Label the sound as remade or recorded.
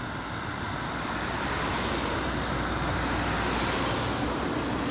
recorded